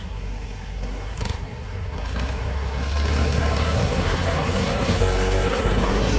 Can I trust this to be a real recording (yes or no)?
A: no